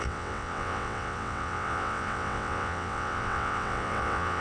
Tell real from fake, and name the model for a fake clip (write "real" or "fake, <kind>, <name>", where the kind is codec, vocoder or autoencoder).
fake, vocoder, WaveNeXt